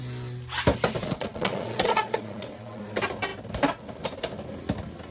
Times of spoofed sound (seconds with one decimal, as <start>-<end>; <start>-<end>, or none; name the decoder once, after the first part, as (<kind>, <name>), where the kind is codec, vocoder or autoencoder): 1.0-2.8 (vocoder, Vocos)